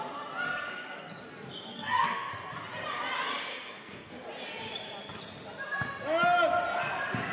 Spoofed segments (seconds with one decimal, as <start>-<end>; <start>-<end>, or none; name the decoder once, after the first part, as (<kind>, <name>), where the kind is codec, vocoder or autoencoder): 0.5-1.1 (codec, SNAC); 1.7-2.3; 3.5-4.1